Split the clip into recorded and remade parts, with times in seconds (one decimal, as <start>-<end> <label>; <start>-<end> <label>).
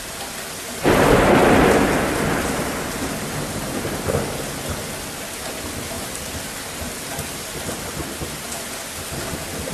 0.0-9.7 recorded